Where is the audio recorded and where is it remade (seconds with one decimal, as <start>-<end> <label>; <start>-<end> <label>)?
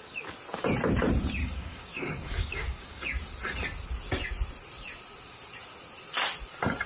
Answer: 0.0-1.4 recorded; 1.4-3.0 remade; 3.0-6.9 recorded